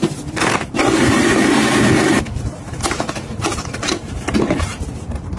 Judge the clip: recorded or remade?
remade